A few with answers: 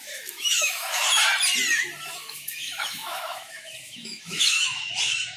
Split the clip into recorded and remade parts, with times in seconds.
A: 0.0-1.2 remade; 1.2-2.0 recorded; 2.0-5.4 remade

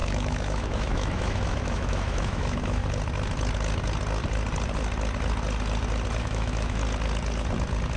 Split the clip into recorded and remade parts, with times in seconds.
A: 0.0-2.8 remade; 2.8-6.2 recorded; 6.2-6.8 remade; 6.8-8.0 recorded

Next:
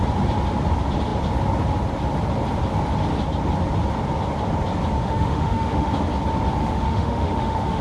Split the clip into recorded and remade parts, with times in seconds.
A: 0.0-5.0 recorded; 5.0-5.9 remade; 5.9-6.6 recorded; 6.6-7.8 remade

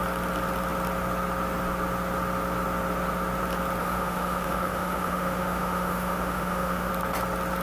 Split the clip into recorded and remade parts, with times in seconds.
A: 0.0-3.8 recorded; 3.8-6.9 remade; 6.9-7.6 recorded

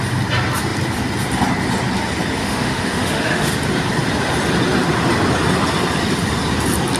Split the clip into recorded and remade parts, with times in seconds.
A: 0.0-2.4 recorded; 2.4-3.5 remade; 3.5-7.0 recorded

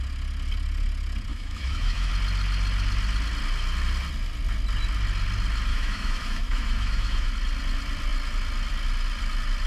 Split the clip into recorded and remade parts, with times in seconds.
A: 0.0-1.3 recorded; 1.3-2.1 remade; 2.1-5.7 recorded; 5.7-7.3 remade; 7.3-9.7 recorded

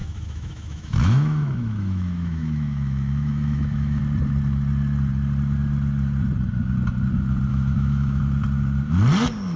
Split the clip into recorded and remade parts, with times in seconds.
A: 0.0-4.0 remade; 4.0-7.5 recorded; 7.5-8.2 remade; 8.2-9.6 recorded

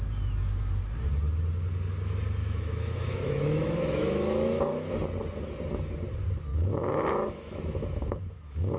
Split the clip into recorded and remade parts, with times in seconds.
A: 0.0-2.4 recorded; 2.4-4.9 remade; 4.9-6.5 recorded; 6.5-8.8 remade